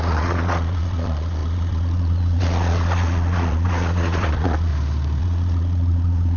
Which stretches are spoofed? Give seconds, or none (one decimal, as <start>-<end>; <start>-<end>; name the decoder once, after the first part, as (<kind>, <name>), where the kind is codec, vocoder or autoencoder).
0.0-4.7 (vocoder, Vocos); 5.2-6.4